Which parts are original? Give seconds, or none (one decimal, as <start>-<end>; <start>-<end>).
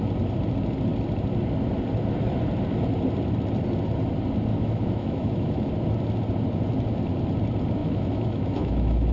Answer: 0.0-4.5; 5.7-7.8